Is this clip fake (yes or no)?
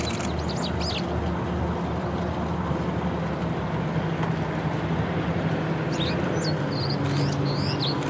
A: no